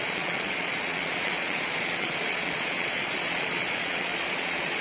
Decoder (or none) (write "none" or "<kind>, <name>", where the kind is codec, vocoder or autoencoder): vocoder, Vocos